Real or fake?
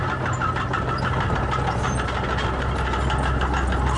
real